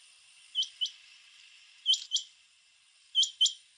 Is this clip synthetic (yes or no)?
no